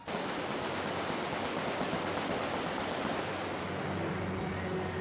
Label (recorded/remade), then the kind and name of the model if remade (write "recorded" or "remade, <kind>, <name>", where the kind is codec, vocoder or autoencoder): recorded